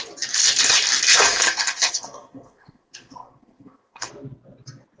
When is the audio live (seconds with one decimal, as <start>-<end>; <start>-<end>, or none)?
0.0-1.1; 4.1-5.0